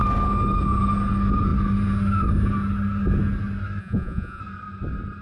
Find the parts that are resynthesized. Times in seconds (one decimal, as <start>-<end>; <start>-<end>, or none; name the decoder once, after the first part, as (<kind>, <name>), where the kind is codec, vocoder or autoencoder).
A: 3.8-4.4 (vocoder, Vocos)